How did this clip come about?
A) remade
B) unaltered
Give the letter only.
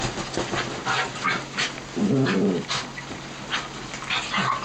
B